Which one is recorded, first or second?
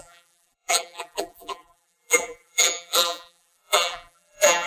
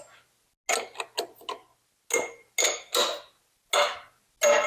second